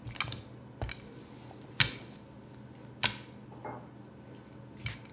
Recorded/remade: recorded